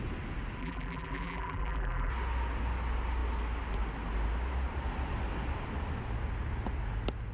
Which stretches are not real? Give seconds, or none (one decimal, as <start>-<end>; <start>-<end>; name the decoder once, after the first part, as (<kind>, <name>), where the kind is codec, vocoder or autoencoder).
0.6-2.1 (vocoder, BigVGAN v2)